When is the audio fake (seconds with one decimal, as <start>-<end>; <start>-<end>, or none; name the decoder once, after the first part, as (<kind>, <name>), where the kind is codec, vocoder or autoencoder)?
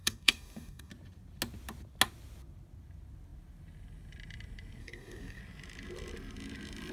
0.0-0.9 (codec, DAC); 4.8-5.4